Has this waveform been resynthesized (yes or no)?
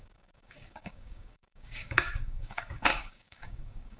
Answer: yes